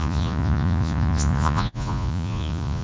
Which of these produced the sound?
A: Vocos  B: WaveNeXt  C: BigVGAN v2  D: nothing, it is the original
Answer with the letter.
A